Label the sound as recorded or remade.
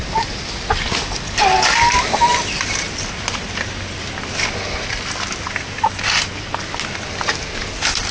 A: recorded